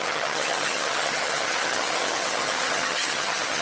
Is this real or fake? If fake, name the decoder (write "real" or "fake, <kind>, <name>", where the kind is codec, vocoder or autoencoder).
fake, vocoder, HiFi-GAN